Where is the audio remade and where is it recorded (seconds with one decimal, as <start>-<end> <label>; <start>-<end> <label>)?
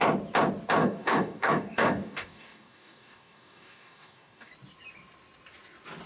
0.0-0.8 recorded; 0.8-4.5 remade; 4.5-6.1 recorded